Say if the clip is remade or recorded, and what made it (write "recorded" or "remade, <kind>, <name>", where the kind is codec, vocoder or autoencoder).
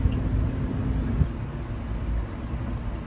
recorded